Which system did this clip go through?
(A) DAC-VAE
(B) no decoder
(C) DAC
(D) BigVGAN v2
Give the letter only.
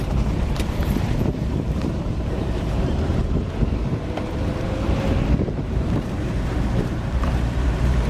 D